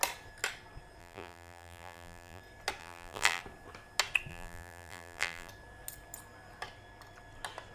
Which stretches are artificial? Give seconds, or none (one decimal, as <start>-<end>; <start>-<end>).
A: 1.0-2.4; 2.8-3.4; 4.3-5.5